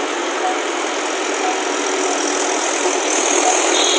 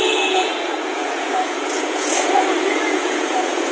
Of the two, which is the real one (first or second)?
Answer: first